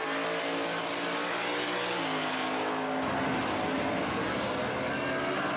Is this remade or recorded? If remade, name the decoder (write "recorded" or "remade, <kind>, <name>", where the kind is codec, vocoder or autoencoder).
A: recorded